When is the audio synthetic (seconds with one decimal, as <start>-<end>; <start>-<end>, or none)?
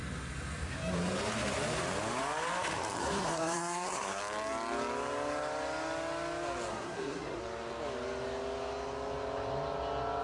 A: 3.0-4.2; 6.7-7.4